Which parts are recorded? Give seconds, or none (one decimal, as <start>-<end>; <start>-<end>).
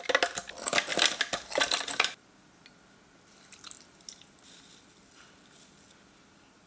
0.0-6.7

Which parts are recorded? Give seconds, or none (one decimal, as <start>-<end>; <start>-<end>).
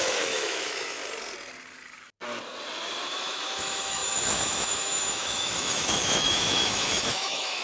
1.0-3.1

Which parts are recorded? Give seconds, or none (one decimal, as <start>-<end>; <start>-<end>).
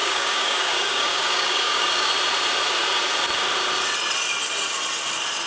2.1-5.5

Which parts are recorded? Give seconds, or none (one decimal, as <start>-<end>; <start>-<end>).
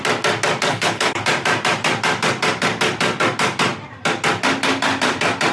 0.0-0.7; 1.2-5.5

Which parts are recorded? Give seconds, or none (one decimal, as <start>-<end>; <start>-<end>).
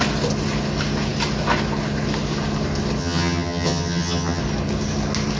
0.0-3.0; 4.4-5.4